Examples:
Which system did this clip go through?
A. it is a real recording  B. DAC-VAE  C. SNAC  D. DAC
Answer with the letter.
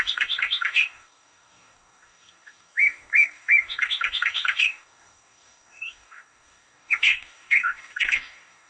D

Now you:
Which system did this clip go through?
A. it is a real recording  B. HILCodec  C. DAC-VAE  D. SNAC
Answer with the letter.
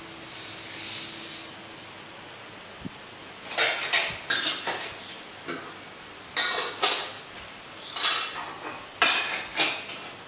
A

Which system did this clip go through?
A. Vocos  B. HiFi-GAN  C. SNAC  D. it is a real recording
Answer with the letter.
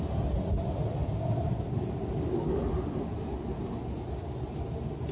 D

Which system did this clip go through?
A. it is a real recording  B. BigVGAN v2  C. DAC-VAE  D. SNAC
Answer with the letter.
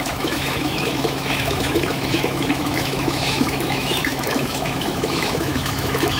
C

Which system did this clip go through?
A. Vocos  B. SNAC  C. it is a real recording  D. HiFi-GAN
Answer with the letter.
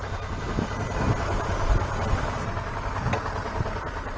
C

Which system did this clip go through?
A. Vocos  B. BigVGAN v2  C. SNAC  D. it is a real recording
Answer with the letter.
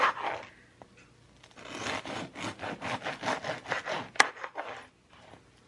D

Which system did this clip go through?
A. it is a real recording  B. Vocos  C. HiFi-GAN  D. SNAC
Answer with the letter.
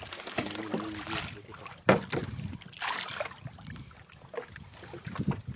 A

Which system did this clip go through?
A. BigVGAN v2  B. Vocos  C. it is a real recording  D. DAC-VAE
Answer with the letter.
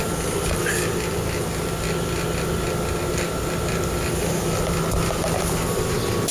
C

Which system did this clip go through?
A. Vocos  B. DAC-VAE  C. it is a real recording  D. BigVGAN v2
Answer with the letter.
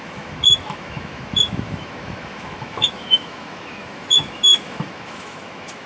B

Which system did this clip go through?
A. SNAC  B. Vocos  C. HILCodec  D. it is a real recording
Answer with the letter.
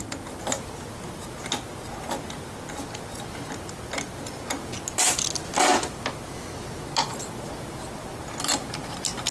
D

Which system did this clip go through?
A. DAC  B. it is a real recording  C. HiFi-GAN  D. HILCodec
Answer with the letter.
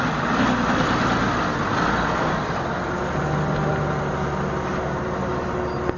B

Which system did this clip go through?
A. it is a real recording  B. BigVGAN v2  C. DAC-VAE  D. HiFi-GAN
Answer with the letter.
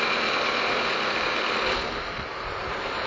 A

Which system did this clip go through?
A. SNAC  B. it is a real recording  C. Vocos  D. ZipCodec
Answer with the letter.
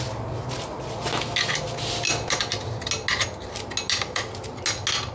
B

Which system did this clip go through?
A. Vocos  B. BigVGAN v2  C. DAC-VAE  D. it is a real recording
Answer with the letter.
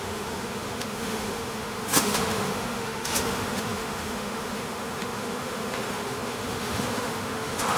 C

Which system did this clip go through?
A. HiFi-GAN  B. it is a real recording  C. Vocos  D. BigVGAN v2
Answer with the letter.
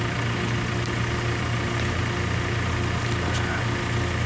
B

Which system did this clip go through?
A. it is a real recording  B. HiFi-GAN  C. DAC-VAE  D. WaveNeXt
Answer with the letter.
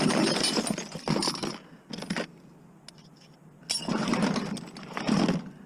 A